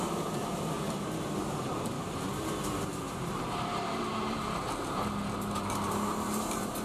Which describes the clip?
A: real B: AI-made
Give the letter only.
B